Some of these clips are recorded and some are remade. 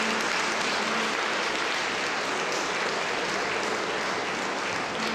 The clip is recorded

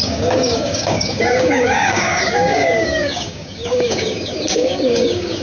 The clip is remade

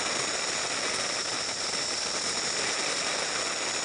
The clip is recorded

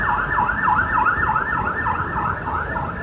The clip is recorded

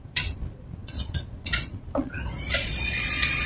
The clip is remade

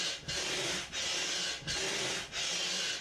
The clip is recorded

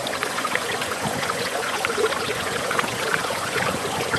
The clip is remade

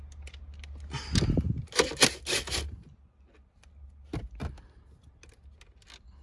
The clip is recorded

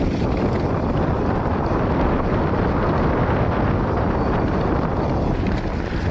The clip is recorded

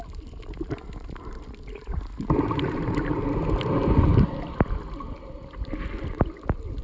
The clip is recorded